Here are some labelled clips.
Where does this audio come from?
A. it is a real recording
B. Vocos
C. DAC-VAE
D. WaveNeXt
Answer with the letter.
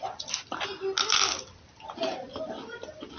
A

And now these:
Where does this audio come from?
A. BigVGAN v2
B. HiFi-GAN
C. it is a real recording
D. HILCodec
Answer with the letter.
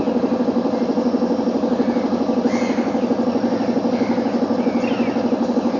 C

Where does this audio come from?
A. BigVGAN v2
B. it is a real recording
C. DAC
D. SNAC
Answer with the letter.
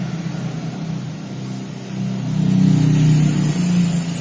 B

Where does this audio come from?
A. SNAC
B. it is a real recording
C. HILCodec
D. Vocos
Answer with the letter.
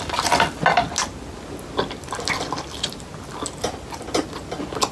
B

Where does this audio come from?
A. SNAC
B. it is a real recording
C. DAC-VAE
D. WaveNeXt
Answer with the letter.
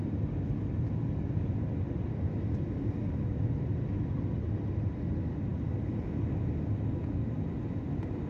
B